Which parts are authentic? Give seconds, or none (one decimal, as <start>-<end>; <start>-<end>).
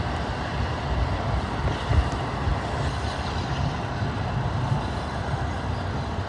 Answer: 0.0-6.3